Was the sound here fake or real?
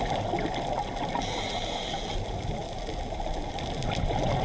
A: real